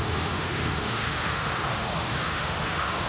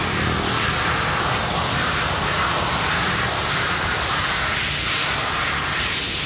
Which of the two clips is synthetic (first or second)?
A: first